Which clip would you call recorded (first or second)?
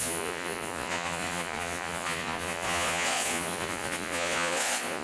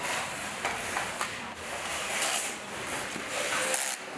second